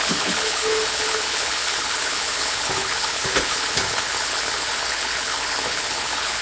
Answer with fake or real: fake